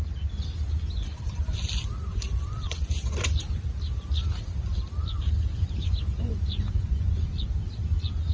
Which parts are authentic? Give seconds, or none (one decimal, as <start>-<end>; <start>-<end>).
0.0-2.1; 2.9-5.8; 7.2-8.3